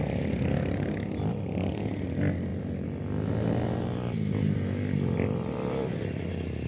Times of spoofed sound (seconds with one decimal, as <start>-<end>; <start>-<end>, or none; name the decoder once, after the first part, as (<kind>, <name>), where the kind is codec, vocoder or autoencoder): none